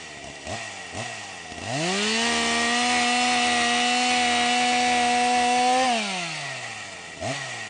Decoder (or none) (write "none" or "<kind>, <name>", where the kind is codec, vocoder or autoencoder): none